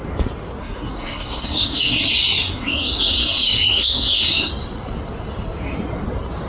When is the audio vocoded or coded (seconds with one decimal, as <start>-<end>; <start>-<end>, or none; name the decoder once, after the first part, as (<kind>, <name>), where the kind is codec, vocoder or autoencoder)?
0.6-4.5 (codec, SNAC)